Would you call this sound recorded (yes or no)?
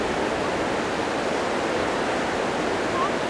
yes